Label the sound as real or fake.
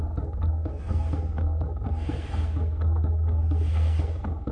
fake